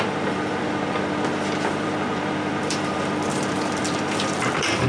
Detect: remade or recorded remade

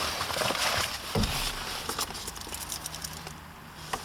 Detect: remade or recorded remade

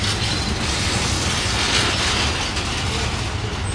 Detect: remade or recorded recorded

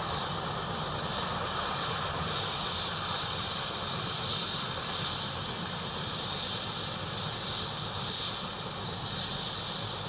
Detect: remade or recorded recorded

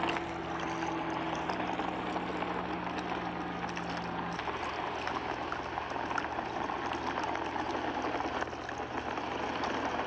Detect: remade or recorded recorded